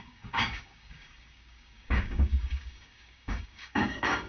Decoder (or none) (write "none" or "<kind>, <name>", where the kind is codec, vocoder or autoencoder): codec, DAC